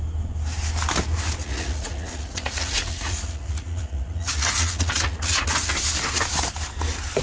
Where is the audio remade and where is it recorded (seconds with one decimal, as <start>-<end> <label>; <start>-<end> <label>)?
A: 0.0-1.4 recorded; 1.4-5.7 remade; 5.7-7.2 recorded